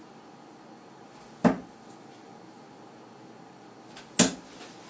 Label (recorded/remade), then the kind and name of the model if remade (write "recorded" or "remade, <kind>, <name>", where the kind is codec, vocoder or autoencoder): recorded